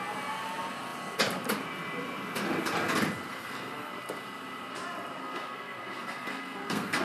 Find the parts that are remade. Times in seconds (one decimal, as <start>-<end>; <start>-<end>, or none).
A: 3.3-3.9; 5.2-7.0